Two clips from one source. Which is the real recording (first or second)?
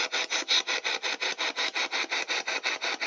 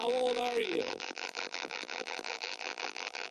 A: first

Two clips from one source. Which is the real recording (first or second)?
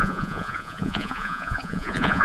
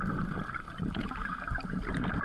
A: second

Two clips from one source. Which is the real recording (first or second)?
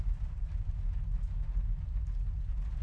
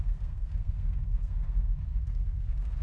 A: first